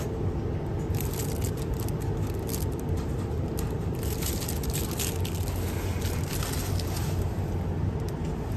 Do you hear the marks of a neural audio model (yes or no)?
no